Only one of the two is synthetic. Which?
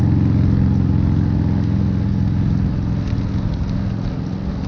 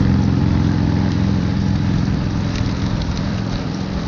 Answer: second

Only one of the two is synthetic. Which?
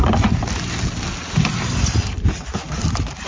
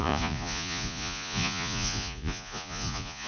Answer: second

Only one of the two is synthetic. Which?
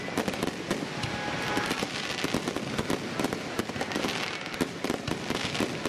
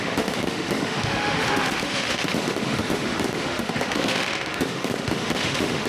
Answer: second